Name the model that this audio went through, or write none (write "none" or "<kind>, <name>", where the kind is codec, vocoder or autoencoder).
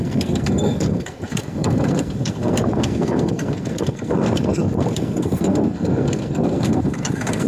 codec, SNAC